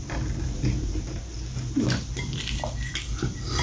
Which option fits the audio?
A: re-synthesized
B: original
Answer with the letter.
B